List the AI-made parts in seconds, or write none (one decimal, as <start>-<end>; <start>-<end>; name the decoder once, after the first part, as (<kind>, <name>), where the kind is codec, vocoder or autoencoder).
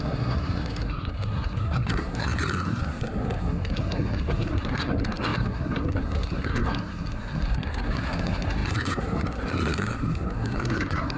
0.0-11.2 (codec, SNAC)